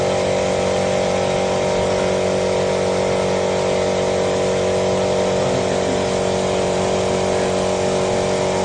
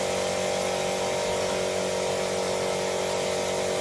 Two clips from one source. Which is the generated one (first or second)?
first